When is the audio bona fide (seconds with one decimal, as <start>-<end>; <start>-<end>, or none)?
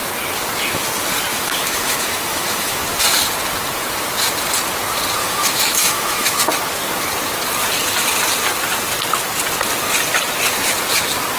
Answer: 0.0-1.3; 2.8-5.2; 6.5-11.4